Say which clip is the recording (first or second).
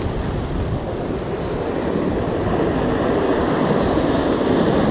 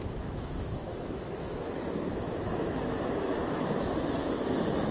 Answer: first